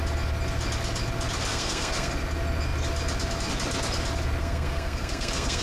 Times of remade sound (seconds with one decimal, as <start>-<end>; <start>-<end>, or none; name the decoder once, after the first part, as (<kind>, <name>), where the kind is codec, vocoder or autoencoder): 1.5-2.1 (codec, SNAC); 4.4-5.6